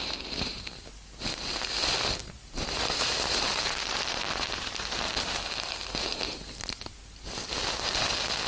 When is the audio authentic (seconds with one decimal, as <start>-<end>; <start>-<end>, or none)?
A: 0.0-2.2; 5.0-8.5